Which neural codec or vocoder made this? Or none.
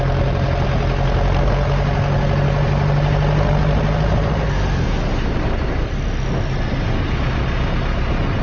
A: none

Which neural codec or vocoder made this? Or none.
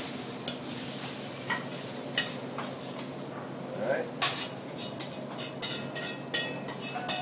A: none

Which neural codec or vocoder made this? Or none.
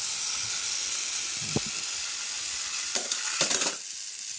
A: none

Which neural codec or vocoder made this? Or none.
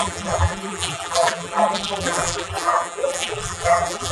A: vocoder, BigVGAN v2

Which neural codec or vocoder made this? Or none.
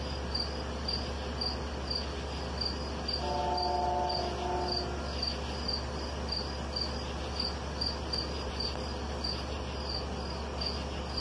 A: none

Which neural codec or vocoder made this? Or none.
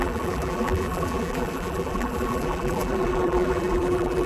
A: vocoder, BigVGAN v2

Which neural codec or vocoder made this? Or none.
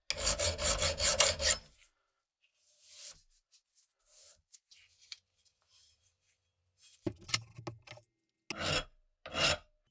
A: none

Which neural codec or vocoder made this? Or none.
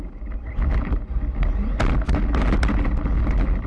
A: none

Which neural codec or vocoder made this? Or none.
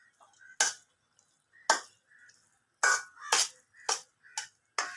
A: none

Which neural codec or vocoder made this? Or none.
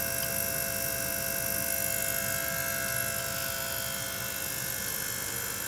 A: none